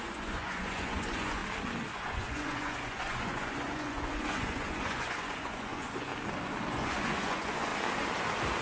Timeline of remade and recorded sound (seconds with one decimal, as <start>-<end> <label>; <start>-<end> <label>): 0.0-1.4 remade; 1.4-1.9 recorded; 1.9-6.1 remade; 6.1-6.7 recorded; 6.7-7.7 remade; 7.7-8.6 recorded